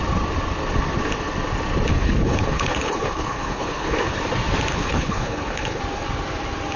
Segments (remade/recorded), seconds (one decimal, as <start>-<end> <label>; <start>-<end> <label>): 0.0-1.9 recorded; 1.9-4.2 remade; 4.2-4.7 recorded; 4.7-5.8 remade; 5.8-6.8 recorded